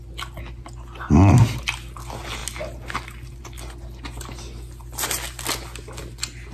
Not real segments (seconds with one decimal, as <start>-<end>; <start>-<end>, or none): none